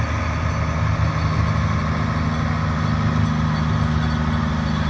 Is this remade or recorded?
recorded